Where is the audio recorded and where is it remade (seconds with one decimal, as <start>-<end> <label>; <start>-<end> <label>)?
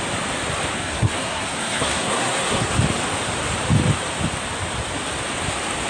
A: 0.0-0.7 recorded; 0.7-2.7 remade; 2.7-5.9 recorded